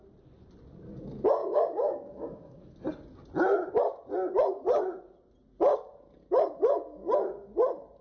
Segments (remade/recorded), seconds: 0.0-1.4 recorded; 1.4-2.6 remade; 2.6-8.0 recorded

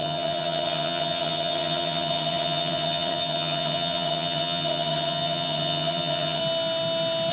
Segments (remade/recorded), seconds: 0.0-6.4 remade; 6.4-7.3 recorded

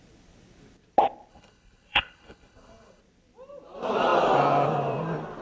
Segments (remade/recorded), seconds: 0.0-1.3 recorded; 1.3-3.0 remade; 3.0-5.4 recorded

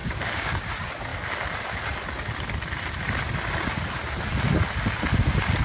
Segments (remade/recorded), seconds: 0.0-0.7 remade; 0.7-5.6 recorded